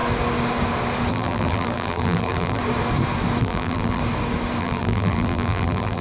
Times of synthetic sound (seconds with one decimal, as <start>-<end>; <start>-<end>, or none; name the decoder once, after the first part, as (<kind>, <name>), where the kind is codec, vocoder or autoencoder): 1.1-2.6 (vocoder, BigVGAN v2); 3.4-4.0; 4.6-6.0